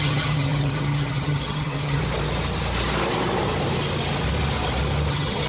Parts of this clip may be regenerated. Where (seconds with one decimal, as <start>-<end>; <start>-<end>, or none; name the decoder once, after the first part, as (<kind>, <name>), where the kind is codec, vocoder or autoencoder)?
0.0-2.0 (vocoder, HiFi-GAN); 5.1-5.5

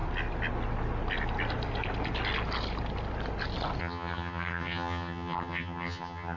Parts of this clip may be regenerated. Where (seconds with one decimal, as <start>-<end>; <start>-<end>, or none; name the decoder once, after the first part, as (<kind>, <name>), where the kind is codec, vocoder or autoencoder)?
3.8-6.4 (vocoder, HiFi-GAN)

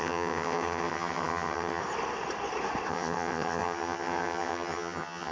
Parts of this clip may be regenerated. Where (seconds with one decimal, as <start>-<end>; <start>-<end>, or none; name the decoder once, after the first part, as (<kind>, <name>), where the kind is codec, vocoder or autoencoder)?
0.0-1.8 (vocoder, HiFi-GAN); 2.9-5.3

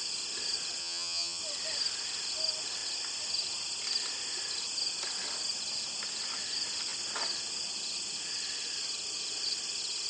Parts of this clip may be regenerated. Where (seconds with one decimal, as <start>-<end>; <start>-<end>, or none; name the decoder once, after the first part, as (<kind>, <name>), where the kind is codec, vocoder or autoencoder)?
0.8-1.4 (vocoder, HiFi-GAN)

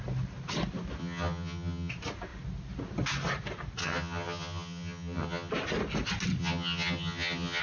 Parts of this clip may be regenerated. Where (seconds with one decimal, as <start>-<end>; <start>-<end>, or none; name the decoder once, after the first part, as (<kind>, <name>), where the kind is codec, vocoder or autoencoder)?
1.0-1.9 (vocoder, HiFi-GAN); 3.8-5.5; 6.4-7.6